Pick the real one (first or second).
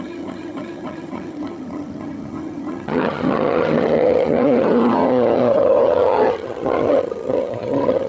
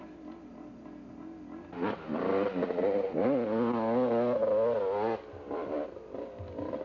second